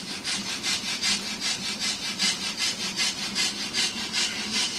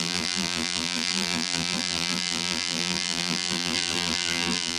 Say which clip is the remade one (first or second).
second